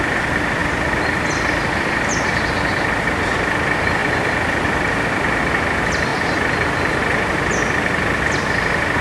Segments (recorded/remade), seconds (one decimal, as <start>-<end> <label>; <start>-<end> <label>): 0.0-4.0 recorded; 4.0-5.4 remade; 5.4-6.1 recorded; 6.1-7.0 remade; 7.0-9.0 recorded